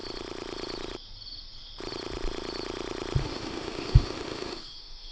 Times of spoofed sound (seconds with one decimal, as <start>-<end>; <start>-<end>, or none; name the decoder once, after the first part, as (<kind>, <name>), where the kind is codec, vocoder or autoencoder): 3.2-5.1 (autoencoder, DAC-VAE)

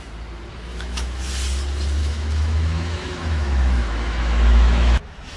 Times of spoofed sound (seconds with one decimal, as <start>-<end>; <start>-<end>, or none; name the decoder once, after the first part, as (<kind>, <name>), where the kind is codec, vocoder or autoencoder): 0.7-1.3 (autoencoder, DAC-VAE); 2.0-5.4

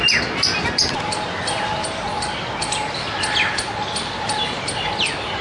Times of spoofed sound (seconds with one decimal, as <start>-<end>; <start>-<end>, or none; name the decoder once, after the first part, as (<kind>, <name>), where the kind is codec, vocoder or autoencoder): none

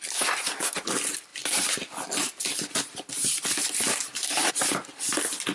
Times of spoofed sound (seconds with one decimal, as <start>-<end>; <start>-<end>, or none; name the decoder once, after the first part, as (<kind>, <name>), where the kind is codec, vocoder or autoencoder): none

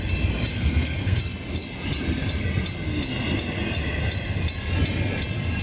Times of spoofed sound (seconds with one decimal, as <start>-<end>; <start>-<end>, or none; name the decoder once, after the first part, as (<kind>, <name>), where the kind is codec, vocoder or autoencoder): 0.5-1.2 (codec, SNAC)

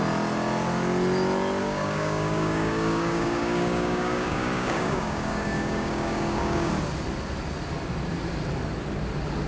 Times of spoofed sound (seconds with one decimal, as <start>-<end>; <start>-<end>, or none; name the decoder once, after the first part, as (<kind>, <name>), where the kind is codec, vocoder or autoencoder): 1.6-6.7 (codec, DAC)

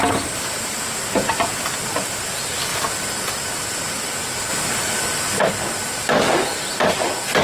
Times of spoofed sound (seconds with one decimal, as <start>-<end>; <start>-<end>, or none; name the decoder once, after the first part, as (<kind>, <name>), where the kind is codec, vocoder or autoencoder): 4.5-5.4 (vocoder, BigVGAN v2)

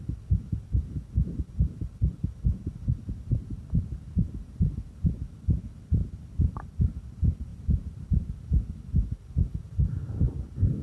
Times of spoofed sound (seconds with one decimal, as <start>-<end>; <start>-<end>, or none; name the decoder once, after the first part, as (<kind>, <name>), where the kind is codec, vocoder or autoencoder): 7.5-8.4 (vocoder, BigVGAN v2)